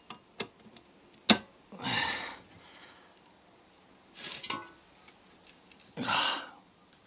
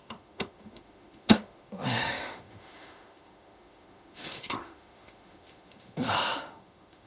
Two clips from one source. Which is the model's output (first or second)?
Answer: second